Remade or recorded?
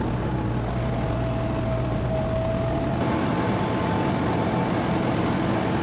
recorded